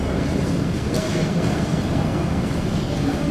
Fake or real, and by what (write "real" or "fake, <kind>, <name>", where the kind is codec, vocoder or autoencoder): fake, codec, SNAC